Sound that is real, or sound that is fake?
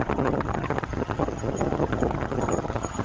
fake